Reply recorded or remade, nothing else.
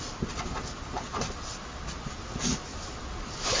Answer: recorded